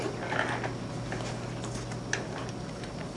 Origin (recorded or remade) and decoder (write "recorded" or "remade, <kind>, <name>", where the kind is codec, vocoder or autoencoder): recorded